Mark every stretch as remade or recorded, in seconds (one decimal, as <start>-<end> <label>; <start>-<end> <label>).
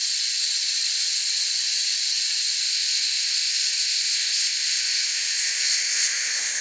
0.0-2.6 recorded; 2.6-6.6 remade